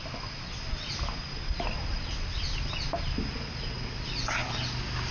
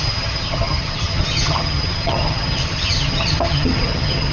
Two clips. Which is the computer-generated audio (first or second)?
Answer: second